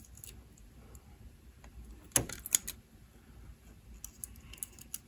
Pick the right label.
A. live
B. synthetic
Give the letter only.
A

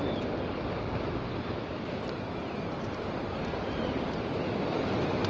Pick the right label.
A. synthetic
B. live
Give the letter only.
A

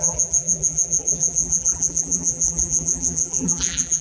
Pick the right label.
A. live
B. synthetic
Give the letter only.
B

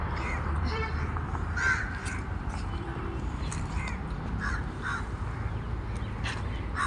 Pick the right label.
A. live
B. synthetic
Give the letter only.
B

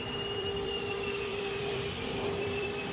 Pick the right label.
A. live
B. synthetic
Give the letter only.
B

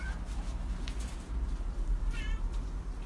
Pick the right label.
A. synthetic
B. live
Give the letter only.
B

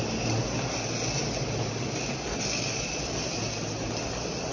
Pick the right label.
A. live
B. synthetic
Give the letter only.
A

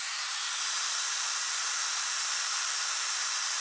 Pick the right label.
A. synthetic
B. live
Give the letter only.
A